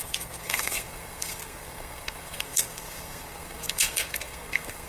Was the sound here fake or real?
fake